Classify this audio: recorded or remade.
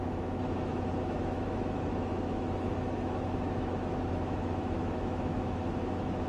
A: remade